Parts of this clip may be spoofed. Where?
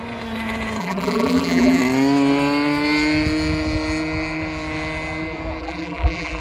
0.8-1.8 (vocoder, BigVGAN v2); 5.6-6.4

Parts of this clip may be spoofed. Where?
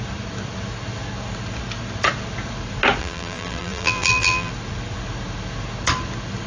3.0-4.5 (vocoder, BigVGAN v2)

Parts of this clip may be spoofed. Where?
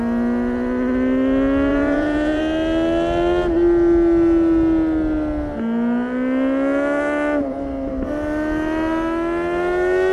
1.7-2.4 (vocoder, Vocos)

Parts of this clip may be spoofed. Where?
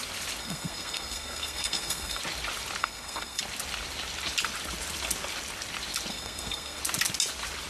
0.4-2.2 (codec, SNAC); 2.8-3.4; 6.1-6.8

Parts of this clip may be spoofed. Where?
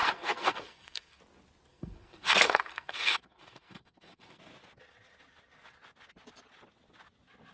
0.0-1.2 (codec, SNAC); 1.7-4.4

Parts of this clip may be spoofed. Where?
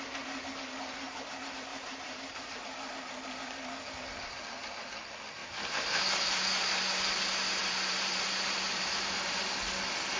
1.7-2.6 (vocoder, BigVGAN v2); 5.4-6.0; 7.6-9.4